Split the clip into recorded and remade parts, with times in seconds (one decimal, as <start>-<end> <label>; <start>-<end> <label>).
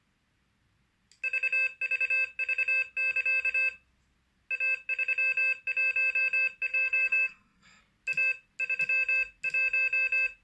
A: 0.0-6.7 recorded; 6.7-7.8 remade; 7.8-10.4 recorded